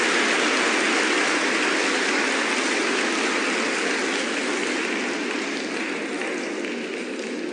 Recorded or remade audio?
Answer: recorded